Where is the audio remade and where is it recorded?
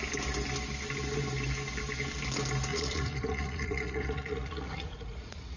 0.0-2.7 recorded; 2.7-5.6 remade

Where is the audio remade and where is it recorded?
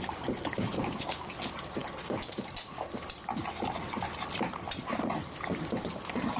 0.0-0.7 recorded; 0.7-1.3 remade; 1.3-6.4 recorded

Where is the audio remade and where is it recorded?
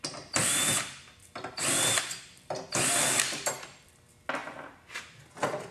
0.0-1.2 recorded; 1.2-4.0 remade; 4.0-5.7 recorded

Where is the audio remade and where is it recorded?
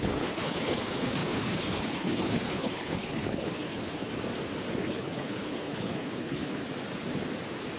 0.0-4.1 remade; 4.1-4.8 recorded; 4.8-6.6 remade; 6.6-7.8 recorded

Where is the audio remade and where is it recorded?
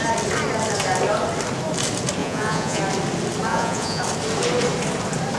0.0-2.2 recorded; 2.2-2.8 remade; 2.8-3.5 recorded; 3.5-4.0 remade; 4.0-5.4 recorded